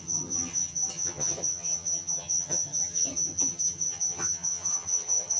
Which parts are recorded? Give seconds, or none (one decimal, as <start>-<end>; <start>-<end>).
none